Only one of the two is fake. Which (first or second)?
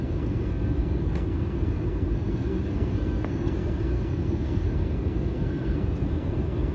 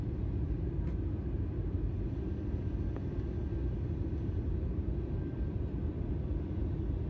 first